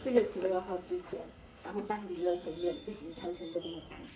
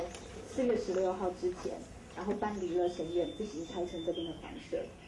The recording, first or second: second